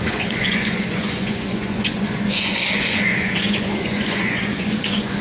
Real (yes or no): no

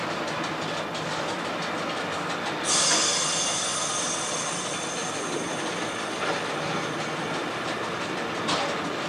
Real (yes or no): yes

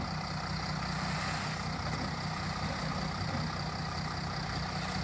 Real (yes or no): yes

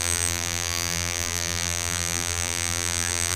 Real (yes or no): no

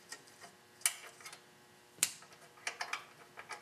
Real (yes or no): yes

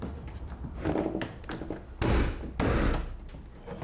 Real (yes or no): yes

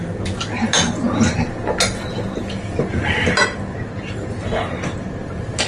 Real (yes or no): yes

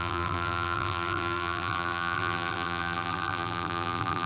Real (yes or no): no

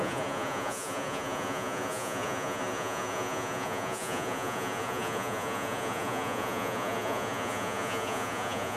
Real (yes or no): no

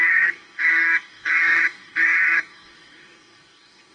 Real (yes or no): no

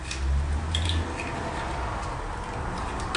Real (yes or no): yes